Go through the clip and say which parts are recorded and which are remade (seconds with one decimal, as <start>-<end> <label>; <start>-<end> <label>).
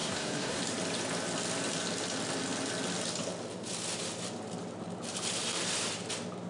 0.0-0.6 remade; 0.6-6.5 recorded